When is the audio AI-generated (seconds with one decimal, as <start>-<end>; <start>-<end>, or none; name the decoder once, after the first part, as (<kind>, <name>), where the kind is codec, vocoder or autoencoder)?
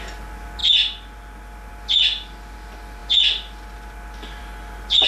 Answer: none